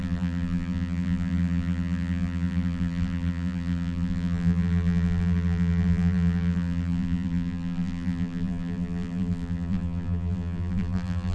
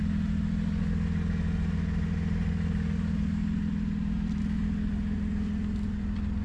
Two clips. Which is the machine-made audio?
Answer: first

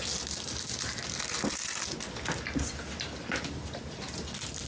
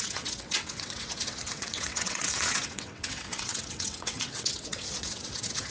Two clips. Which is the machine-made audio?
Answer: second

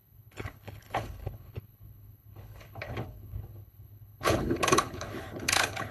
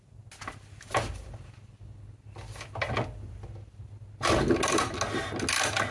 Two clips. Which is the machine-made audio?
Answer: first